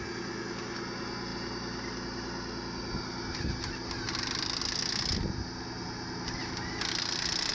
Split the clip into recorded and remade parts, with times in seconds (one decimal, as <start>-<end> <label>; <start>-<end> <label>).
0.0-7.5 recorded